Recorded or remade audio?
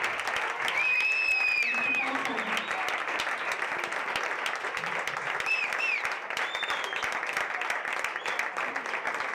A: recorded